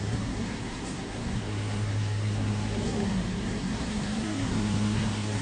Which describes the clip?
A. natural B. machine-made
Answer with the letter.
B